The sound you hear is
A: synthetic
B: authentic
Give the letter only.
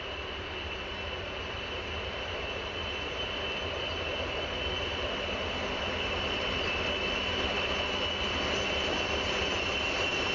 B